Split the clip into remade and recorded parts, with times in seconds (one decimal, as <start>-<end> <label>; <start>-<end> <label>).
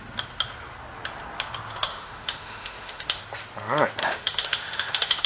0.0-1.9 recorded; 1.9-3.2 remade; 3.2-4.0 recorded; 4.0-5.3 remade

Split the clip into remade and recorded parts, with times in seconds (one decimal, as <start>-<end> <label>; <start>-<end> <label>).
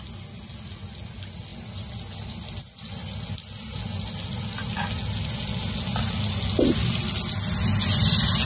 0.0-8.5 recorded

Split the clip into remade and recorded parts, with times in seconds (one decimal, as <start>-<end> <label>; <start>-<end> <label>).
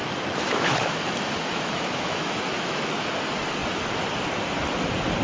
0.0-3.1 remade; 3.1-5.2 recorded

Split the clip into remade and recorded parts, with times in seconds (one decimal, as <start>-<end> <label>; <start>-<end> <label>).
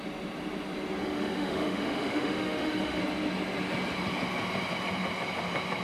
0.0-1.0 recorded; 1.0-3.0 remade; 3.0-5.8 recorded